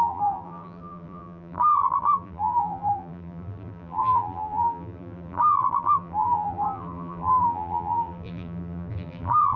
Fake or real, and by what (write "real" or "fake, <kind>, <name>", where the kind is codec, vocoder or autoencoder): fake, vocoder, BigVGAN v2